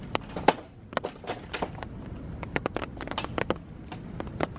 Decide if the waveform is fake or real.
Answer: real